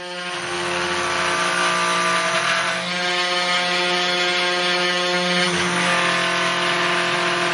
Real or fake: real